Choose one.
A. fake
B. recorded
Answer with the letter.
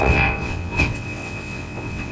A